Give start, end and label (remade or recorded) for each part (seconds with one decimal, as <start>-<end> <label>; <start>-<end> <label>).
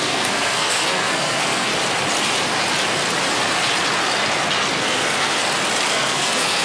0.0-1.7 remade; 1.7-4.8 recorded; 4.8-5.4 remade; 5.4-5.9 recorded; 5.9-6.6 remade